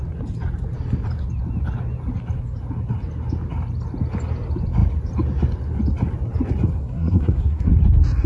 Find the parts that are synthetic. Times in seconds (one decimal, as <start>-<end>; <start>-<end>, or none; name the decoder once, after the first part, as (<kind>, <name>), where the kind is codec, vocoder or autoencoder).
6.8-7.7 (codec, SNAC)